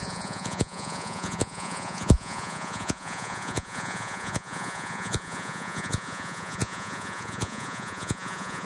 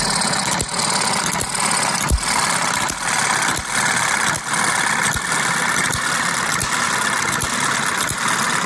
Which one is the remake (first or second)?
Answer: first